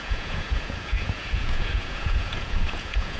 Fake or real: fake